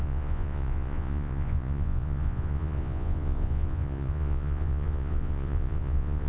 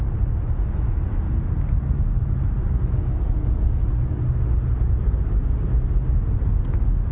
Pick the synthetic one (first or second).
first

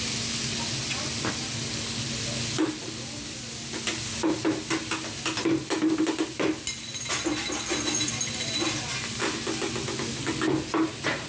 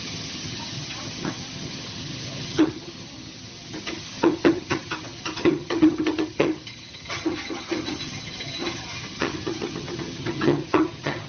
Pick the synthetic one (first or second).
second